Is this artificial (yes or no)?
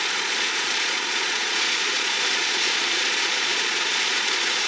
yes